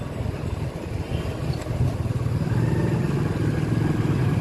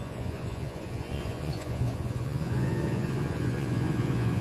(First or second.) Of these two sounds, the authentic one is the first